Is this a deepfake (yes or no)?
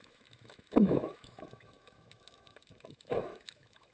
yes